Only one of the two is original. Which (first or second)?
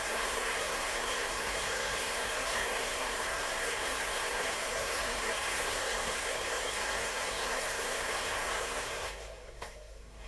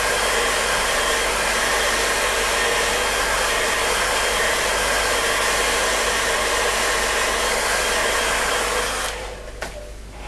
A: second